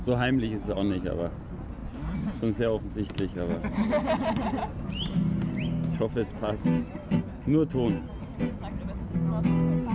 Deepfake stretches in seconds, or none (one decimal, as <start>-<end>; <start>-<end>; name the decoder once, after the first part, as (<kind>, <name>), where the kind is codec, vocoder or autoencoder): none